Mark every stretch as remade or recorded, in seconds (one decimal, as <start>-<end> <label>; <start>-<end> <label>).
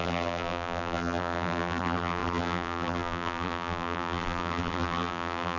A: 0.0-5.6 remade